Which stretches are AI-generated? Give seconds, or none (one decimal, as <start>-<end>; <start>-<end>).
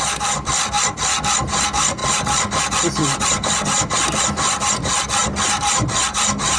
3.0-4.7; 5.2-6.6